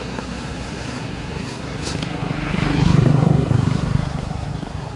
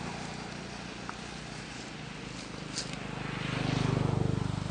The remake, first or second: first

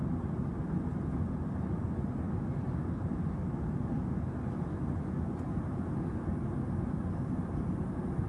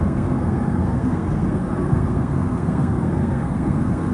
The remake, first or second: second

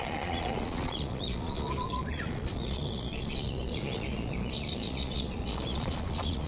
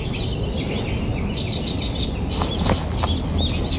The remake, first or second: first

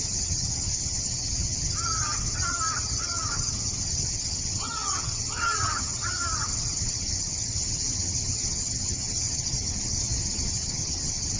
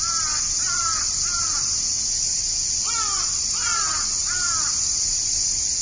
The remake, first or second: first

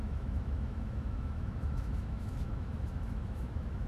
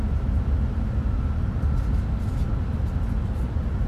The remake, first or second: first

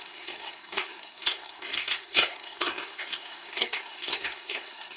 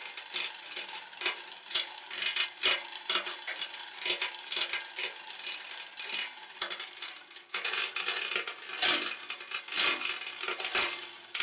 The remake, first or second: first